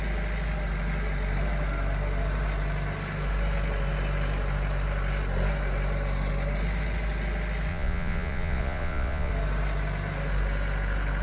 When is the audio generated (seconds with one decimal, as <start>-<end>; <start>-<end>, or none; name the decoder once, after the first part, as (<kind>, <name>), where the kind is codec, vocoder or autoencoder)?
7.7-9.3 (vocoder, Vocos)